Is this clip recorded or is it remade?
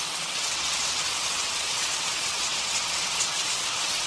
remade